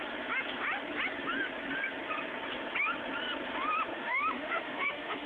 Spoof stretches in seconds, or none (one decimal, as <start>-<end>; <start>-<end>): 3.9-5.3